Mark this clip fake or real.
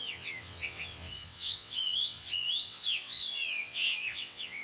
fake